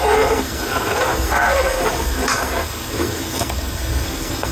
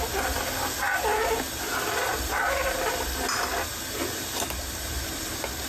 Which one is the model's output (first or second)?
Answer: first